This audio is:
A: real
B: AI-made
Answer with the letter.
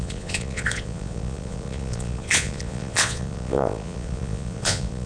B